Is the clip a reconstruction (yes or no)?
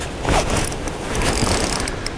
no